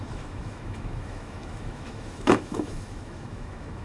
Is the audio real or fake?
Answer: fake